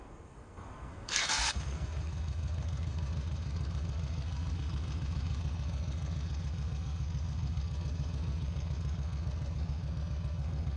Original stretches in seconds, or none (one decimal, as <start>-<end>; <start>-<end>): none